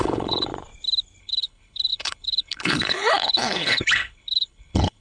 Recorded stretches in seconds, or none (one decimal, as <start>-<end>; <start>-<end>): 0.5-1.2